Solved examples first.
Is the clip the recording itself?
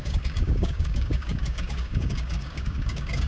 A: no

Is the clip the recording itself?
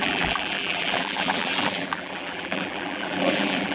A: no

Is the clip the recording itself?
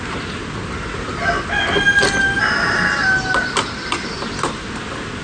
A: yes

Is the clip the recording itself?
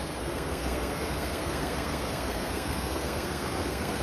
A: no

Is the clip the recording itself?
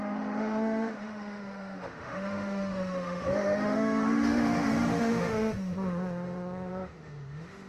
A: no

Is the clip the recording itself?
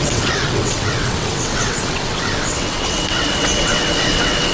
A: no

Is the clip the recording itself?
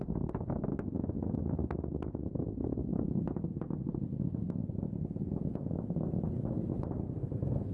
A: yes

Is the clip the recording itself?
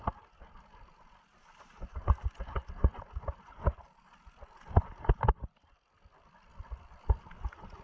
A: no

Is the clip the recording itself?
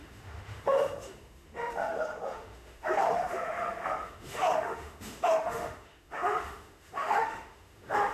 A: no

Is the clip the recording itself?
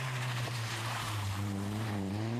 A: no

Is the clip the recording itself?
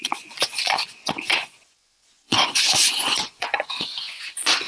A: no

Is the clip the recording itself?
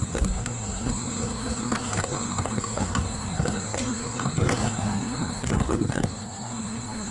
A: no